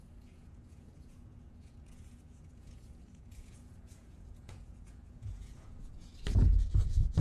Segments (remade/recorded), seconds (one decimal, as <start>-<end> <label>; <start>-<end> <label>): 0.0-6.1 remade; 6.1-6.7 recorded; 6.7-7.2 remade